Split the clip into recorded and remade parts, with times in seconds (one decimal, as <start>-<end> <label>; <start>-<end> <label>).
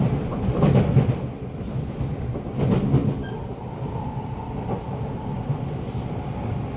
0.0-6.8 recorded